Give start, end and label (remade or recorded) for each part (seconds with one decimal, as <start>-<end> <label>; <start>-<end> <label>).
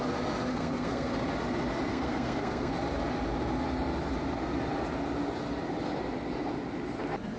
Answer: 0.0-0.5 recorded; 0.5-1.1 remade; 1.1-1.9 recorded; 1.9-2.7 remade; 2.7-7.4 recorded